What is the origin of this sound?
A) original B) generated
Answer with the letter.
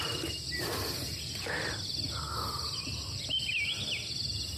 A